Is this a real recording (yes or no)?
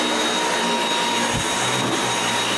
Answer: yes